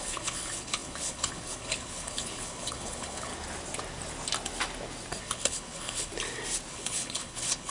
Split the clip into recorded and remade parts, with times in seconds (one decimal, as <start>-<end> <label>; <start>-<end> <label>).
0.0-3.3 remade; 3.3-5.2 recorded; 5.2-6.1 remade; 6.1-6.7 recorded; 6.7-7.7 remade